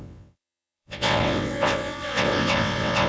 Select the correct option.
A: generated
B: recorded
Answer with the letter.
A